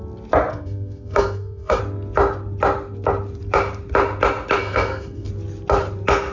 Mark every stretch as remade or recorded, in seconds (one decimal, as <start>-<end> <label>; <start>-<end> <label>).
0.0-0.5 recorded; 0.5-1.8 remade; 1.8-4.6 recorded; 4.6-5.3 remade; 5.3-6.3 recorded